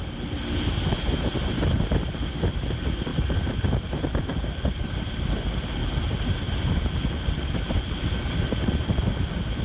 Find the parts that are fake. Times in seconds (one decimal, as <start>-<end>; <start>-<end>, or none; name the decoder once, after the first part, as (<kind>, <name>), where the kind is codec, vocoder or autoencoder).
3.1-4.2 (vocoder, BigVGAN v2)